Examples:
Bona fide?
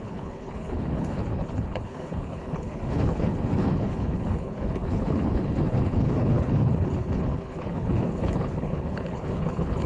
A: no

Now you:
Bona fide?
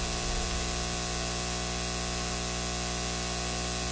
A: yes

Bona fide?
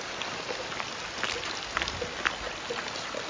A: yes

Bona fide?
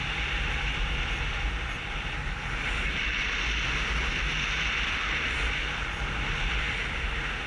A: yes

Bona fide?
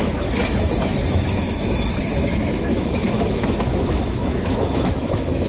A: no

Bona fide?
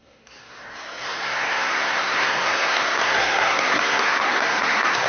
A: no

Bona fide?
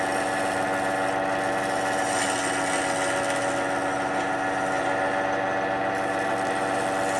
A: yes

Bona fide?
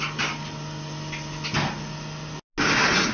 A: yes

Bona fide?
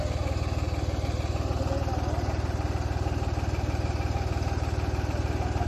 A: yes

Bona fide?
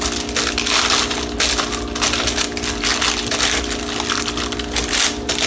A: yes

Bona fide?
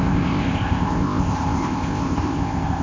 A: no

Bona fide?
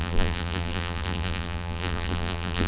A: no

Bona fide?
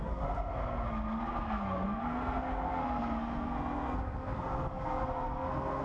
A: no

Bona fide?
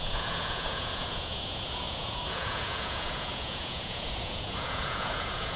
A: no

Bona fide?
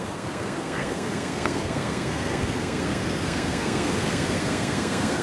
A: no